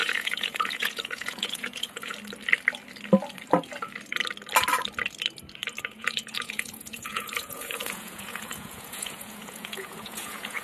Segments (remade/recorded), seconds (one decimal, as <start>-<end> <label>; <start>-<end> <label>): 0.0-2.1 remade; 2.1-5.8 recorded; 5.8-10.6 remade